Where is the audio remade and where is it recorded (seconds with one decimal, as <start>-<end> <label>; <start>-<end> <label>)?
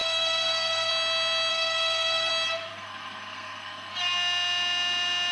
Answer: 0.0-0.9 remade; 0.9-1.5 recorded; 1.5-2.3 remade; 2.3-2.7 recorded; 2.7-3.9 remade; 3.9-5.3 recorded